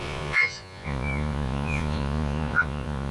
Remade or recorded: remade